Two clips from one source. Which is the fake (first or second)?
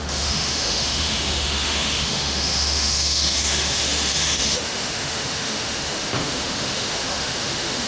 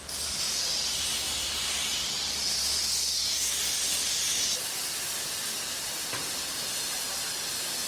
first